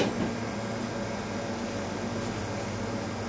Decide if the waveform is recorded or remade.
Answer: recorded